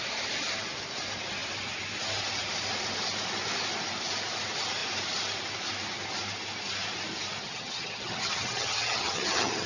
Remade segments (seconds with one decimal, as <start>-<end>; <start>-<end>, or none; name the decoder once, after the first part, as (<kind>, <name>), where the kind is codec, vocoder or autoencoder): 7.4-9.7 (vocoder, HiFi-GAN)